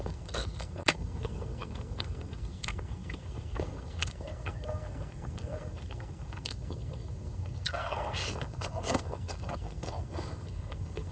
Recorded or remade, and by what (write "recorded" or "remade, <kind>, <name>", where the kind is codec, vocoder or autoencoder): remade, codec, SNAC